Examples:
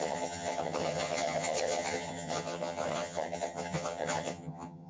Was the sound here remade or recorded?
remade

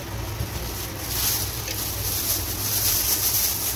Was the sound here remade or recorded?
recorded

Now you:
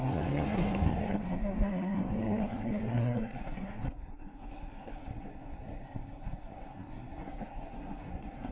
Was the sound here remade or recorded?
remade